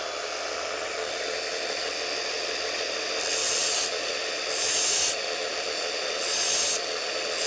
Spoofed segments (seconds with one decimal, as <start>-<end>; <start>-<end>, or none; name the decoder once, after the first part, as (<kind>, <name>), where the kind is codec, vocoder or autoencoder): 3.4-4.3 (vocoder, BigVGAN v2)